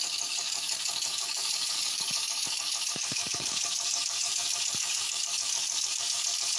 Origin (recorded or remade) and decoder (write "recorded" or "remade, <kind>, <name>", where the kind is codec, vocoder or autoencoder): remade, codec, DAC